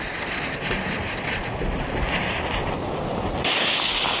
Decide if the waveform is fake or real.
real